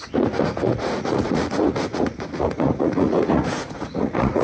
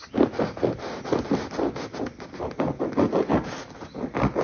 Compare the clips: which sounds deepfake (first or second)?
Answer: first